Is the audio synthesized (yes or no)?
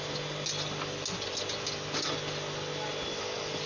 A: no